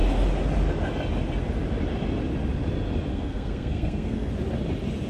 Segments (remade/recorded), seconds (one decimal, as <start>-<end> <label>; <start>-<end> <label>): 0.0-3.1 recorded; 3.1-4.3 remade; 4.3-5.1 recorded